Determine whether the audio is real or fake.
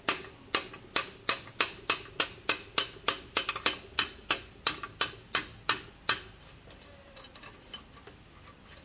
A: real